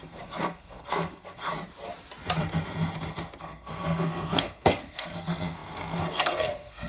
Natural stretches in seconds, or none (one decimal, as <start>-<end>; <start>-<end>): 1.5-3.4